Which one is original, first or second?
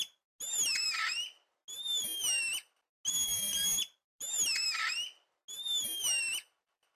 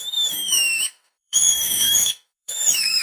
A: first